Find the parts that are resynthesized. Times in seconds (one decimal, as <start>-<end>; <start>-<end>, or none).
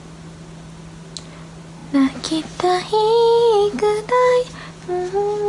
none